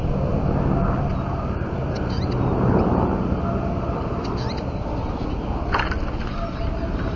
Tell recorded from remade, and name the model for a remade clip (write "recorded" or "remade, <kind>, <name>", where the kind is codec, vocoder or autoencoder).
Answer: recorded